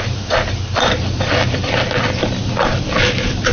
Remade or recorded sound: recorded